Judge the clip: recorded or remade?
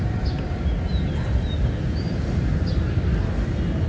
recorded